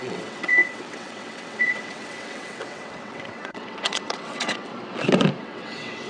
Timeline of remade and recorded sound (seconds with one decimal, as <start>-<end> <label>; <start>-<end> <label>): 0.0-4.7 remade; 4.7-5.4 recorded; 5.4-6.1 remade